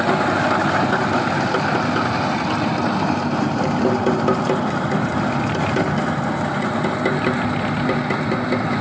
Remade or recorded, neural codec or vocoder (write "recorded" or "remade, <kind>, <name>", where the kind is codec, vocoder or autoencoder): recorded